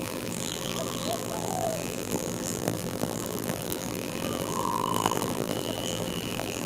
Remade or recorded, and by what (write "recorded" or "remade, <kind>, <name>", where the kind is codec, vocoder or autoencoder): remade, vocoder, BigVGAN v2